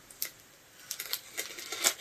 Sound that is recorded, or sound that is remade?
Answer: recorded